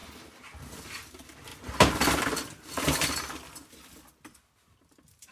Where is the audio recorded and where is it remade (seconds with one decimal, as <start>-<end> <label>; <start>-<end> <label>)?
0.0-1.1 recorded; 1.1-1.5 remade; 1.5-4.7 recorded; 4.7-5.3 remade

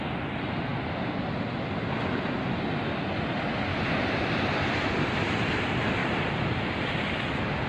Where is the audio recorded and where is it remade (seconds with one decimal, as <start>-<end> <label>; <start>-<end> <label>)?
0.0-3.7 recorded; 3.7-4.5 remade; 4.5-7.7 recorded